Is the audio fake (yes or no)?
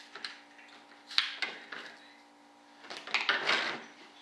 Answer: no